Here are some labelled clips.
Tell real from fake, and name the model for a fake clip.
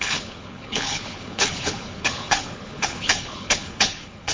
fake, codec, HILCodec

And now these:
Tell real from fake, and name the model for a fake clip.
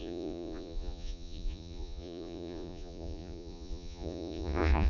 fake, vocoder, Vocos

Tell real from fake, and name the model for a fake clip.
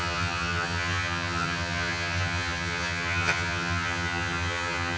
fake, vocoder, HiFi-GAN